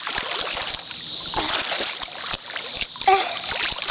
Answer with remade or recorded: recorded